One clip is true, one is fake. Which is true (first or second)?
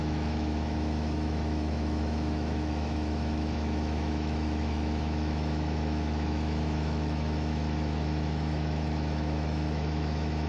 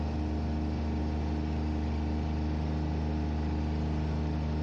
second